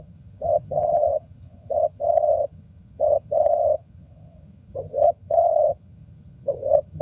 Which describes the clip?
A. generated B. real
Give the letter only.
A